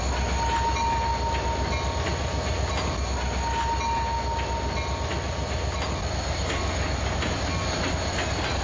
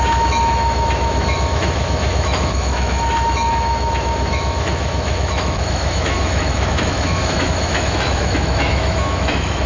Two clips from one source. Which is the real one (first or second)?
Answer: first